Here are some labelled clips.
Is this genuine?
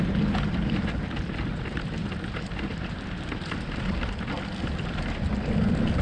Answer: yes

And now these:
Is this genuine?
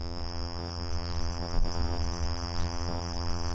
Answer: no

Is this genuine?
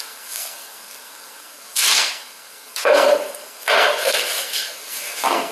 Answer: no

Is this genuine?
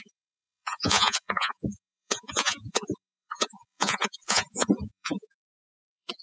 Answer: no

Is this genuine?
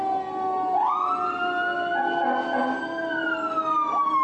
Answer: yes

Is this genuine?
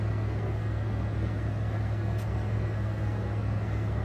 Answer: no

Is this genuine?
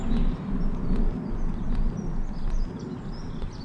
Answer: yes